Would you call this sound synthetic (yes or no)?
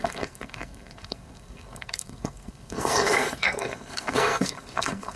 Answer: yes